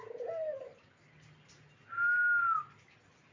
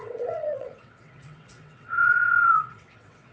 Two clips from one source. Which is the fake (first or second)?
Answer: second